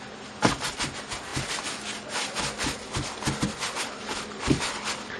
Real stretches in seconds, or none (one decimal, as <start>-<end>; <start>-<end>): 0.0-5.2